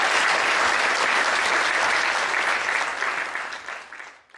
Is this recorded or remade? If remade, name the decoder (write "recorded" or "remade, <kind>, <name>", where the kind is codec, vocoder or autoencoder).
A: recorded